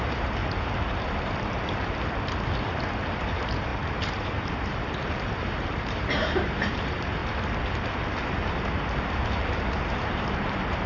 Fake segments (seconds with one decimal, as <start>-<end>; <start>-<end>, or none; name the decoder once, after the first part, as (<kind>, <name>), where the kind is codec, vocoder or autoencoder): 0.0-0.4 (vocoder, BigVGAN v2); 3.3-7.2; 8.3-10.9